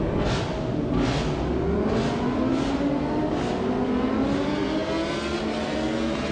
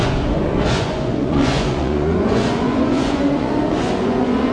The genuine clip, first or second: first